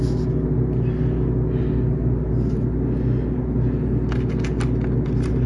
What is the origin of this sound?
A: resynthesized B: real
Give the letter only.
B